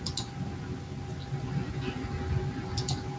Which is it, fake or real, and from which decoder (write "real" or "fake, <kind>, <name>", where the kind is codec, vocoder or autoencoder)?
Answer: real